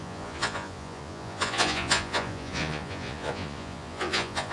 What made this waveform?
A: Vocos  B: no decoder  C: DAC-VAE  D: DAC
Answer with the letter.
A